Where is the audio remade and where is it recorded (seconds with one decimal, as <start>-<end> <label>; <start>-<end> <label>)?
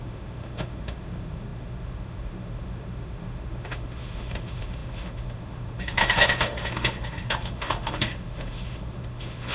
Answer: 0.0-9.5 remade